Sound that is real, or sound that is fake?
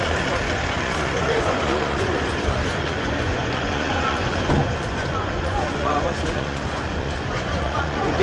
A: fake